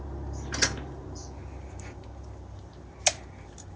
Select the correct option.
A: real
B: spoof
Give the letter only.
A